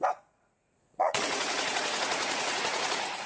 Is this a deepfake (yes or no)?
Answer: yes